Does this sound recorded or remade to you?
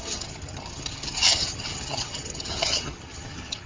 remade